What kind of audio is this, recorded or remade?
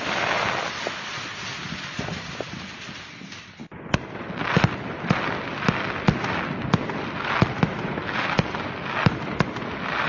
recorded